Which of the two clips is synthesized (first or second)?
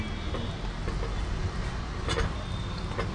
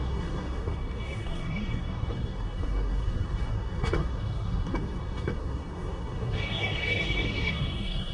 second